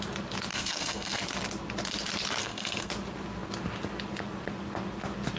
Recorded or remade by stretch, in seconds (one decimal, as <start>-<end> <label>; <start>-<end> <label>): 0.0-0.5 recorded; 0.5-1.2 remade; 1.2-2.4 recorded; 2.4-2.9 remade; 2.9-5.4 recorded